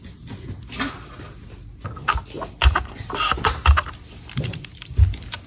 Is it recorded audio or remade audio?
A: recorded